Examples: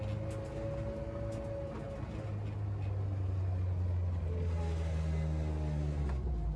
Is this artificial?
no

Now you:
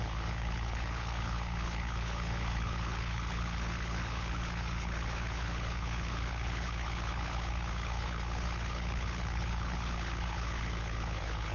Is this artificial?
yes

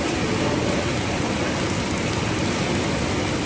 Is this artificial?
no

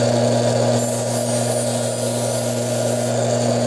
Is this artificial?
no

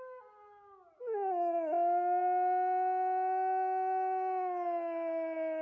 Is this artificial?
no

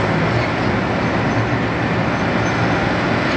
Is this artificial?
no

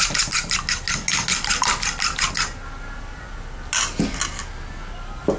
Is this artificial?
no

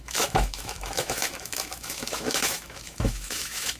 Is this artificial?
yes